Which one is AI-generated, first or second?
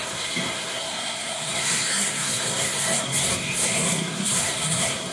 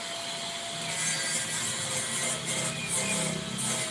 first